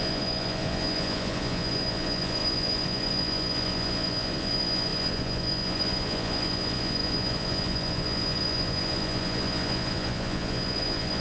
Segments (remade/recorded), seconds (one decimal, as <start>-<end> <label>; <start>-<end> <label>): 0.0-11.2 remade